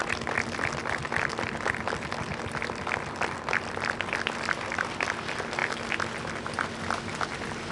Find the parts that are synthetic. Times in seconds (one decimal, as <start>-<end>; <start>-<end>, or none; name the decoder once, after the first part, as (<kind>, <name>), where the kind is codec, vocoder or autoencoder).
none